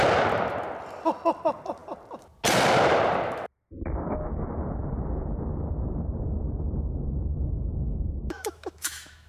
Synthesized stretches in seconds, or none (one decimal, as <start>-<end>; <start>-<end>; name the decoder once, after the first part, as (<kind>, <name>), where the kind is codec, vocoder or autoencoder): 7.3-9.3 (autoencoder, DAC-VAE)